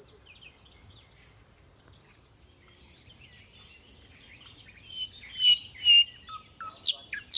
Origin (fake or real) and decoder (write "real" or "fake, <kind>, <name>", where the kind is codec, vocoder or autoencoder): real